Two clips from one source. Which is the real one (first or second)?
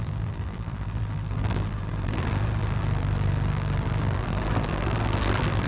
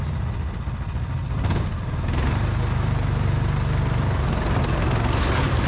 second